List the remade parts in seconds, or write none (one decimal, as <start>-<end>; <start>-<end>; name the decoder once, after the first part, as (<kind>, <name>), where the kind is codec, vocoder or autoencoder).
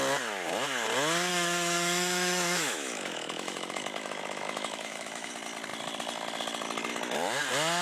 1.3-5.3 (autoencoder, DAC-VAE)